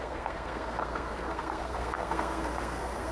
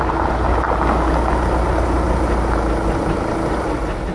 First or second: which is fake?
first